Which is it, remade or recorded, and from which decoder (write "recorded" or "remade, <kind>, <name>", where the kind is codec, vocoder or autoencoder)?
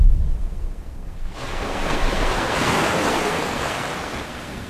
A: remade, codec, SNAC